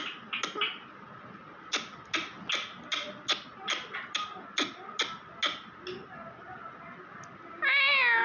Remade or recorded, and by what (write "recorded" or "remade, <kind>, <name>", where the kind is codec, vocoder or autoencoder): recorded